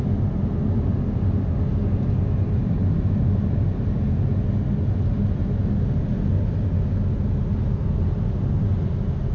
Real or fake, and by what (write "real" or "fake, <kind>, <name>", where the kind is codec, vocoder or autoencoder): real